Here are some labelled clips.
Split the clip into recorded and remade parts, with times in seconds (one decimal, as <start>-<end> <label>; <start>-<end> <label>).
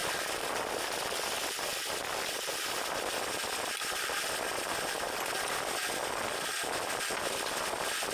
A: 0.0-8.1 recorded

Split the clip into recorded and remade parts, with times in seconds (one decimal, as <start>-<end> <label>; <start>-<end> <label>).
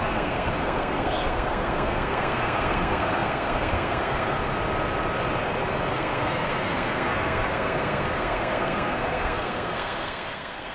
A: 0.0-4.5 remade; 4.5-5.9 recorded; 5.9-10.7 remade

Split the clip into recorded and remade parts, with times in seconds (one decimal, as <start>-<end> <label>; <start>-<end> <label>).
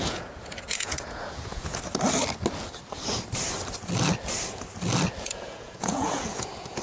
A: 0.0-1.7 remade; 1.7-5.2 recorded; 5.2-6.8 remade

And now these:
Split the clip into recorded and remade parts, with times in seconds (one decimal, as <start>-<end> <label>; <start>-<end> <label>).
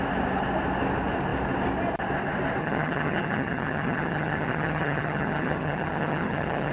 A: 0.0-2.6 recorded; 2.6-6.7 remade